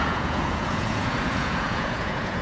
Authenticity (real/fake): fake